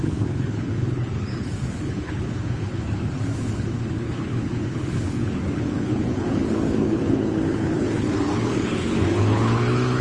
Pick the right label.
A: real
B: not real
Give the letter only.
B